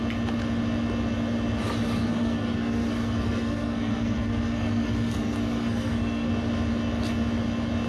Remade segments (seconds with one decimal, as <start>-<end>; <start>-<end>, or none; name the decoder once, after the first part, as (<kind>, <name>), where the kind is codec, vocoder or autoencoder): 2.1-6.3 (codec, SNAC)